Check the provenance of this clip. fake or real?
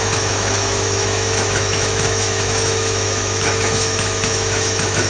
fake